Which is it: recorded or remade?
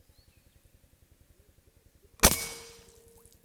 recorded